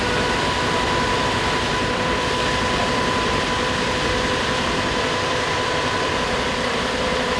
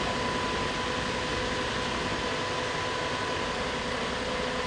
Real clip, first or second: second